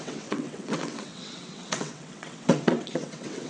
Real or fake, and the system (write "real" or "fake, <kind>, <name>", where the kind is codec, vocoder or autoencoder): fake, vocoder, WaveNeXt